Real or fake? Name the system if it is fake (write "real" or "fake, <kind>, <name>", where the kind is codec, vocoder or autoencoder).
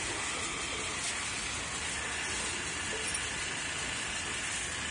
real